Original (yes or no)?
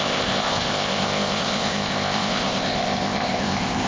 no